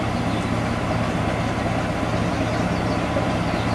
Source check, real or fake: real